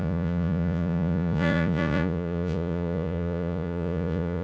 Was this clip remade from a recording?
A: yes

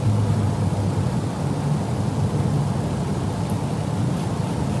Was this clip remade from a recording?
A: no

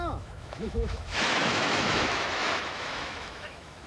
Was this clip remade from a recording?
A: yes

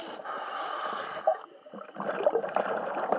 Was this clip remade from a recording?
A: no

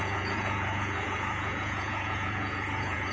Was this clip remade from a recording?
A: yes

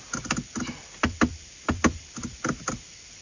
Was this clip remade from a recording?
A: no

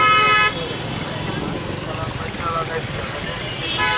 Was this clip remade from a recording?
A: no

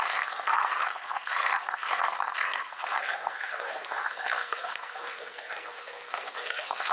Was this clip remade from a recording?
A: yes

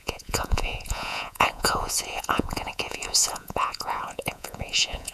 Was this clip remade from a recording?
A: yes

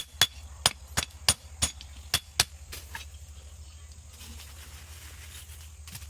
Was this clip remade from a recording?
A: no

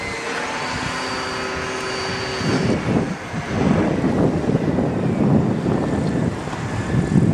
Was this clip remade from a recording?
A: no